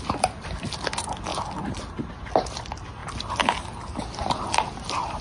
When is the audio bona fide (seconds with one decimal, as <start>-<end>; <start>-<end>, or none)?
0.0-5.2